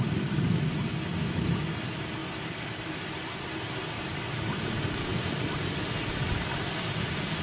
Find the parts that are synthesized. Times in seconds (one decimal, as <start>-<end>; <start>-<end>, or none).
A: 0.0-5.1; 5.8-7.4

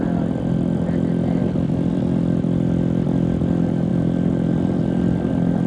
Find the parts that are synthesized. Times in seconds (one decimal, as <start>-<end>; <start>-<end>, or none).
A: 1.4-2.0; 3.9-5.3

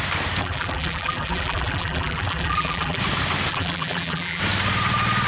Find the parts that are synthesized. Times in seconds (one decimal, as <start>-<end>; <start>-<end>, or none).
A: 0.4-3.0; 3.5-4.4

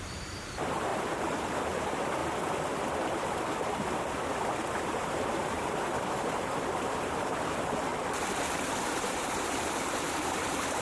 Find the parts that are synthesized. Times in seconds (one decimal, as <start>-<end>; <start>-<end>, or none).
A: 0.0-2.2; 4.7-7.9; 8.8-10.8

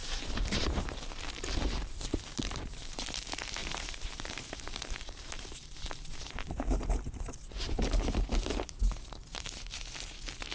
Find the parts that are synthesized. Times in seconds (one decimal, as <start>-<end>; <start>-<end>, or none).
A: 0.0-3.1; 3.6-7.4

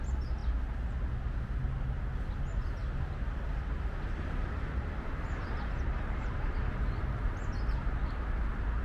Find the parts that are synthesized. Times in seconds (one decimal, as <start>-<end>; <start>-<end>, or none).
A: 2.8-7.3

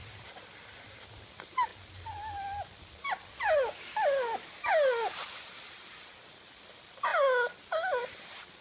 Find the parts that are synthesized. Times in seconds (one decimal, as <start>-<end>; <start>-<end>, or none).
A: 0.0-1.0

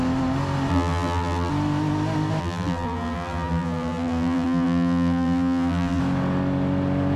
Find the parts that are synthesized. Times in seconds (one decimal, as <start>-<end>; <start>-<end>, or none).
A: 0.7-1.5; 2.4-6.0